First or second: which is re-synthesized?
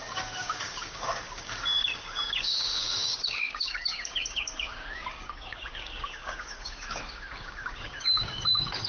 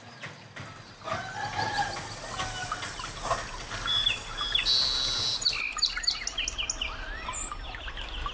first